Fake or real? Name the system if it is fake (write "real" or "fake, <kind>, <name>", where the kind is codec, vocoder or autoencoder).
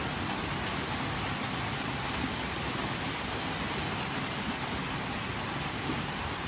real